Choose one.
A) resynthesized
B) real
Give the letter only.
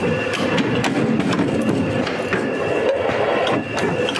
B